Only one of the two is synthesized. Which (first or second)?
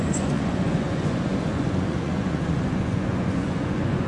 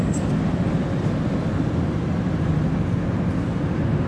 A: first